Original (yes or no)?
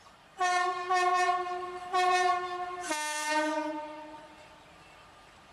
no